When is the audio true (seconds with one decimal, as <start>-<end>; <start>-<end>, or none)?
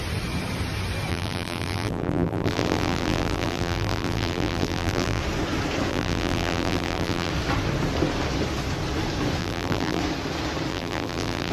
0.0-1.1; 5.2-5.9; 7.3-9.4; 10.0-10.7